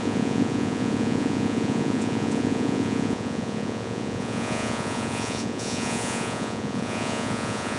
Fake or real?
fake